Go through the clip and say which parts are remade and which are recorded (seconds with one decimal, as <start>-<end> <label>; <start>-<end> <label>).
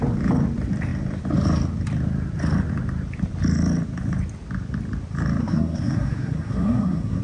0.0-5.4 recorded; 5.4-7.2 remade